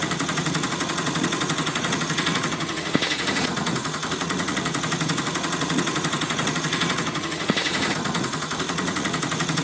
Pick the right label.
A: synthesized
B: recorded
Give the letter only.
A